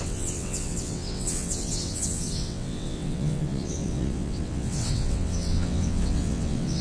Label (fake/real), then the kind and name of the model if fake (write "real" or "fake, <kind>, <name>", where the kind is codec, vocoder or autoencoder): fake, vocoder, WaveNeXt